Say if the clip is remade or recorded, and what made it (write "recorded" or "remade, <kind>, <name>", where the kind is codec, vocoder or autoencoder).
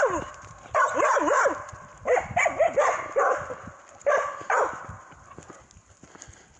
recorded